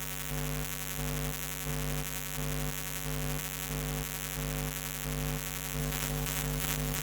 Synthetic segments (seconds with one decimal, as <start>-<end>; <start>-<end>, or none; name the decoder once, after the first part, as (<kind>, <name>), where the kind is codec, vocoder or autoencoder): 5.8-7.0 (autoencoder, DAC-VAE)

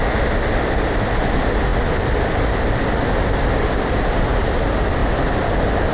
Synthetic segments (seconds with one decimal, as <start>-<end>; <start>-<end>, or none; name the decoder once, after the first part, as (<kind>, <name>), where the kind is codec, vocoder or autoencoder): none